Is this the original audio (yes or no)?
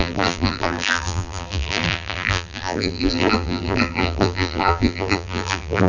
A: no